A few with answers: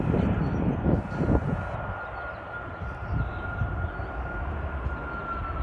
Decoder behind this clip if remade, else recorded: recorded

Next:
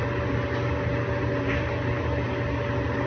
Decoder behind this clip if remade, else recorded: recorded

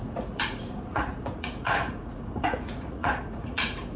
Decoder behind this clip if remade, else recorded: remade, vocoder, Vocos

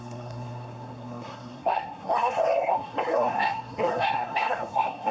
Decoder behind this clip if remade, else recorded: remade, codec, SNAC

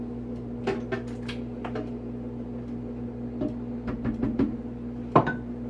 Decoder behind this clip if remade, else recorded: remade, vocoder, BigVGAN v2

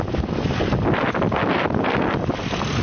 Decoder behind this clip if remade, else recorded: recorded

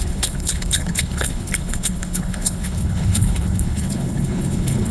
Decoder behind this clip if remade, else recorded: remade, codec, HILCodec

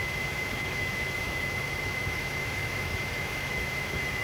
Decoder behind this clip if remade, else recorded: remade, autoencoder, DAC-VAE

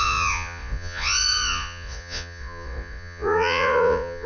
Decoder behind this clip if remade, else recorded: remade, vocoder, Vocos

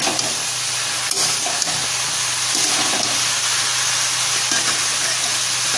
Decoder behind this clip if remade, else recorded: recorded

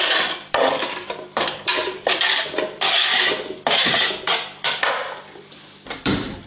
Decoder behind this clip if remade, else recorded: remade, vocoder, BigVGAN v2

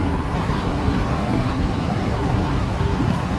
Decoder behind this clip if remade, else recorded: remade, codec, SNAC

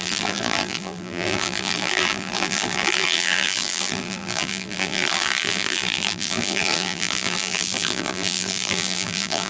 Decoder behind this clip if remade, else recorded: remade, vocoder, BigVGAN v2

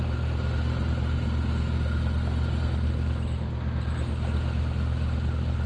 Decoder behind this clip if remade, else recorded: recorded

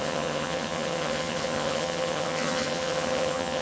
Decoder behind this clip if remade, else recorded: remade, vocoder, HiFi-GAN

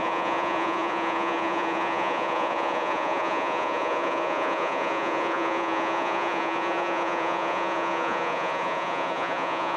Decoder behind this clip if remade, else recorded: remade, vocoder, Vocos